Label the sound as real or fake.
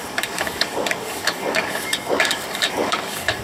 fake